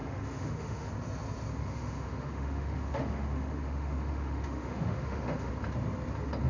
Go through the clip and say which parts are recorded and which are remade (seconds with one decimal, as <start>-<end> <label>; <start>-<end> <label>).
0.0-0.9 remade; 0.9-1.6 recorded; 1.6-5.5 remade; 5.5-6.5 recorded